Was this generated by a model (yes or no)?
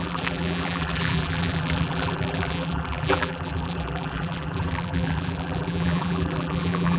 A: yes